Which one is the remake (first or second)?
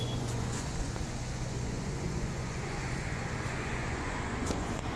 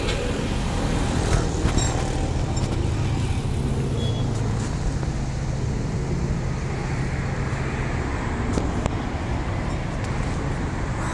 first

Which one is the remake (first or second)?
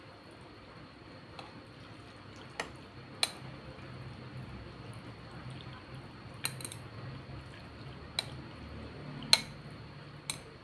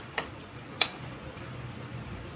second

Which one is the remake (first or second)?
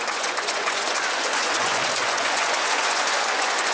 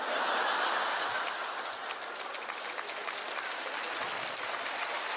first